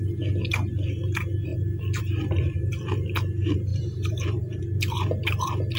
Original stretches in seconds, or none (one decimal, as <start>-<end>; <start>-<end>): 0.0-3.7; 4.6-5.8